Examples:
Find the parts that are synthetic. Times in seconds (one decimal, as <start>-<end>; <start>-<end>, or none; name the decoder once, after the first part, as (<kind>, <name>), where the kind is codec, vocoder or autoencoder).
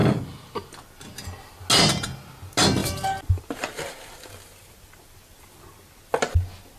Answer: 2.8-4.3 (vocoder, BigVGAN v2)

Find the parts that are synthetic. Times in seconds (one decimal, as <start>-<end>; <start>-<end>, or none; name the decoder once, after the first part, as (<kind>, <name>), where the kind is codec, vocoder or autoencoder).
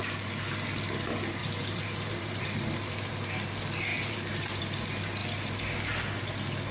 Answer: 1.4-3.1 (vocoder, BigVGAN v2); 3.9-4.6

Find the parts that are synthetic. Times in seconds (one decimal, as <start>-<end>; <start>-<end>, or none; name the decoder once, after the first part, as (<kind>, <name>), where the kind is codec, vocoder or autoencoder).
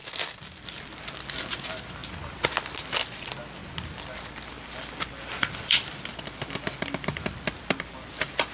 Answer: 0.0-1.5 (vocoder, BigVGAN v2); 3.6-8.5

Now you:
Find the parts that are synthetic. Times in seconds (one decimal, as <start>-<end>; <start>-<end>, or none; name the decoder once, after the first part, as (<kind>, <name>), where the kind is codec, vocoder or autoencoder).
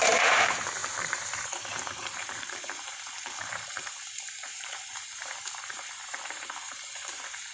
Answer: 0.0-7.5 (vocoder, BigVGAN v2)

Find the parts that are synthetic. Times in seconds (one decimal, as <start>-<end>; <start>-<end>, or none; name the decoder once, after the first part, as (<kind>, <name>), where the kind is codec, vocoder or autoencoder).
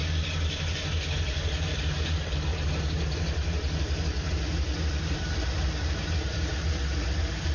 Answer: 0.7-7.5 (vocoder, BigVGAN v2)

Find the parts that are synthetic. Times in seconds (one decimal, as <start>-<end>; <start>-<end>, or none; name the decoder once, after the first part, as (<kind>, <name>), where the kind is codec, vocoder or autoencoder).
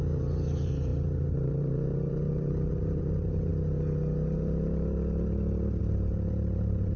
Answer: 0.0-3.5 (vocoder, BigVGAN v2); 5.8-7.0